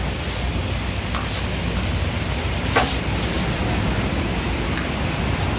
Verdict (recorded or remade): recorded